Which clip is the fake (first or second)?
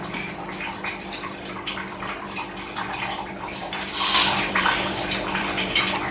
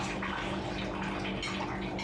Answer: first